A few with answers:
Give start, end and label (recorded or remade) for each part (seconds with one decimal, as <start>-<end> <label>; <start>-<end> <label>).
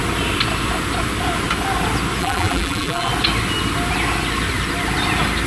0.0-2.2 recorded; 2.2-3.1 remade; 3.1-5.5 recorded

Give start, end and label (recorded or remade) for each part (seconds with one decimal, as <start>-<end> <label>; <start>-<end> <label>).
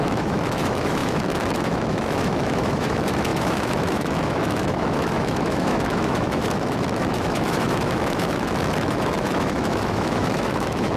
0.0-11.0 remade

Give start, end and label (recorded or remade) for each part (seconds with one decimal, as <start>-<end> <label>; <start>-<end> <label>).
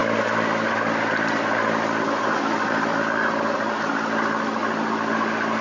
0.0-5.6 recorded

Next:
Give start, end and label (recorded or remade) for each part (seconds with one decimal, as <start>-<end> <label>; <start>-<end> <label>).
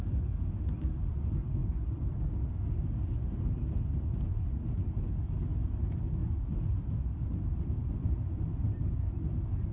0.0-9.7 recorded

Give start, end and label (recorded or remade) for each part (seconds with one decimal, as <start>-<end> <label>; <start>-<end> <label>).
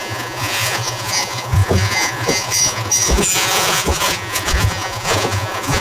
0.0-5.8 remade